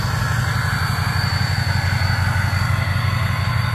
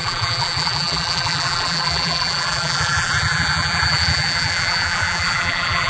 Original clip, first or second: first